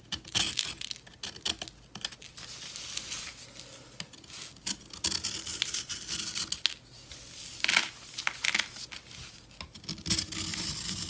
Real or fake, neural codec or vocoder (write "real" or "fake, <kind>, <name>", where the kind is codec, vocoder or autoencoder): real